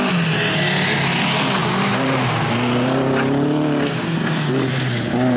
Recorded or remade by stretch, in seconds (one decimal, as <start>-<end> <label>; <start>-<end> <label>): 0.0-5.4 recorded